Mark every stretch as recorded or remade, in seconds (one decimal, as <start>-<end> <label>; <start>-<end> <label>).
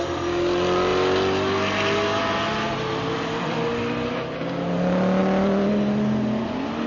0.0-6.9 recorded